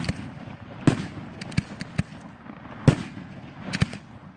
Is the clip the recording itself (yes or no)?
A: yes